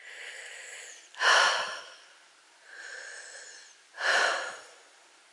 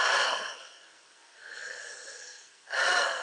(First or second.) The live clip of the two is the first